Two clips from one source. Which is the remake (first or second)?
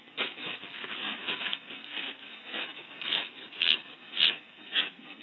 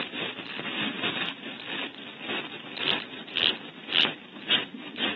first